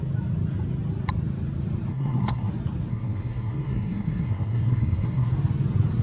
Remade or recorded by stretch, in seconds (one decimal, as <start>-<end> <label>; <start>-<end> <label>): 0.0-1.9 recorded; 1.9-2.5 remade; 2.5-2.9 recorded; 2.9-5.3 remade; 5.3-6.0 recorded